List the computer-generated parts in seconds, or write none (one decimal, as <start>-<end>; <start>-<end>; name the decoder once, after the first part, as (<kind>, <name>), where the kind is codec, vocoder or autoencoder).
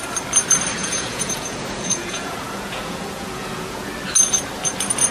0.8-3.9 (vocoder, Vocos)